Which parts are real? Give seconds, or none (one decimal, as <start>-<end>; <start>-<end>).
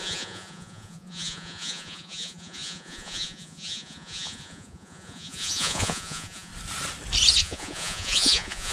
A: 6.5-7.4